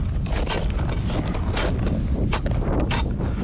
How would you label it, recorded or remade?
recorded